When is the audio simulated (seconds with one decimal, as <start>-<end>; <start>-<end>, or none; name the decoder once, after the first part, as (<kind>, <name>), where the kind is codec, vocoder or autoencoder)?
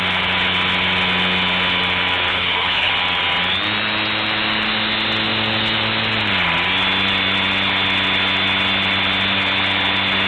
2.3-2.9 (codec, HILCodec)